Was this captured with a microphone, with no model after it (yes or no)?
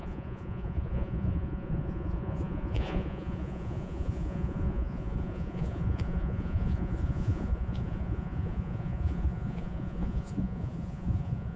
no